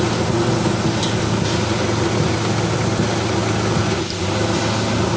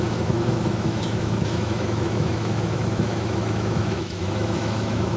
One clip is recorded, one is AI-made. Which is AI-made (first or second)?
second